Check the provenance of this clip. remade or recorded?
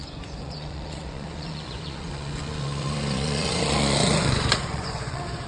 remade